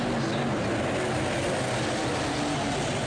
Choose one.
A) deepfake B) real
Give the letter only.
B